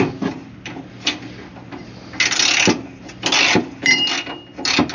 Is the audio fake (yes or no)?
no